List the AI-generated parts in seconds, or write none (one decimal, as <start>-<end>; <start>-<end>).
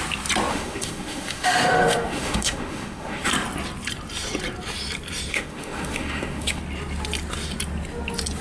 0.5-3.3; 5.3-6.6